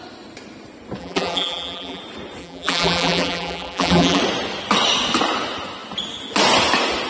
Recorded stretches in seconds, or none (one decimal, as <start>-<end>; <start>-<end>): 0.0-1.0; 2.0-2.4; 4.2-7.1

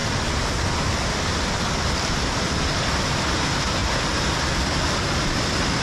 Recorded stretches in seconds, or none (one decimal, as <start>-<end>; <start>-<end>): 0.0-5.8